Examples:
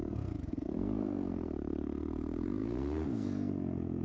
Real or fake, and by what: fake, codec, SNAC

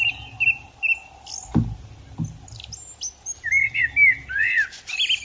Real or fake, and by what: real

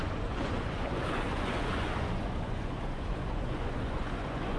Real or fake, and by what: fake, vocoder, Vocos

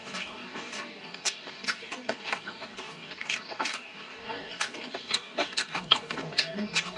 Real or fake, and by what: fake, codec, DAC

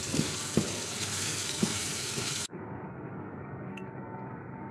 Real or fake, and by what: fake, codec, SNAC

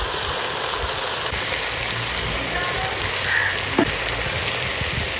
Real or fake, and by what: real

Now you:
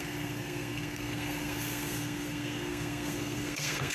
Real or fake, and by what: fake, codec, SNAC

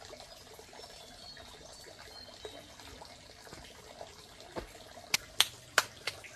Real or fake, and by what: real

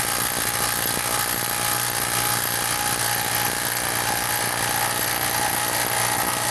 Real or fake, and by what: real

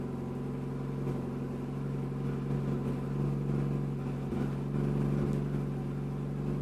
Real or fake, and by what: real